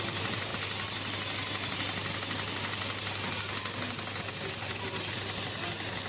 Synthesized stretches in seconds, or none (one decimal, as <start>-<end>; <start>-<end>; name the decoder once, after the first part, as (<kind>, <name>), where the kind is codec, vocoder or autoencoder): none